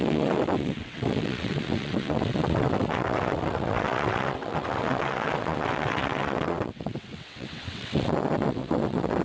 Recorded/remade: remade